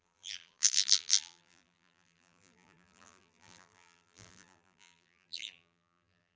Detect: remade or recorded remade